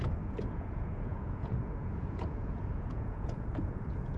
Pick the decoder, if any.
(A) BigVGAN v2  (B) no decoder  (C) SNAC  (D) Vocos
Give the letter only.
D